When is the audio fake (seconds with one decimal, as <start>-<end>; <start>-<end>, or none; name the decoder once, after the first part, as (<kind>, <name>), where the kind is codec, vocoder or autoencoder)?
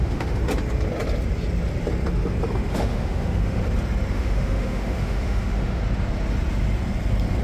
0.0-0.4 (autoencoder, DAC-VAE); 2.7-3.6; 4.1-5.8